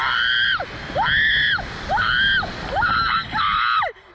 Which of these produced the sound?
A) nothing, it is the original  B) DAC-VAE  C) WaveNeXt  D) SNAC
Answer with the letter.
A